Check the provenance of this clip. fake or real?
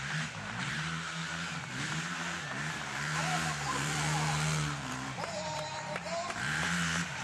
fake